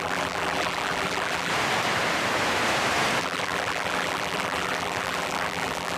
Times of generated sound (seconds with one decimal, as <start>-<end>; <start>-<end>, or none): 0.0-1.5; 3.2-6.0